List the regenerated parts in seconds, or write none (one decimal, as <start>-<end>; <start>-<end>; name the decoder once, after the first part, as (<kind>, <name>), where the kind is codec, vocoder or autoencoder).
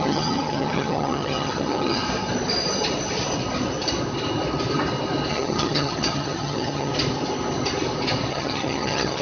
0.0-2.0 (vocoder, HiFi-GAN); 5.3-6.9; 8.3-9.2